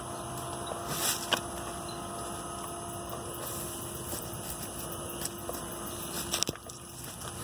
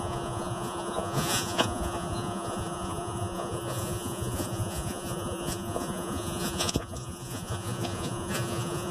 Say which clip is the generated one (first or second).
second